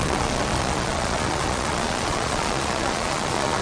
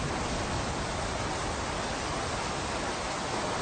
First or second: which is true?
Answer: second